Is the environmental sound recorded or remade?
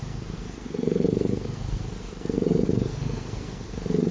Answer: remade